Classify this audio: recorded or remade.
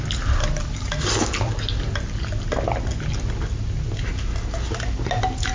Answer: recorded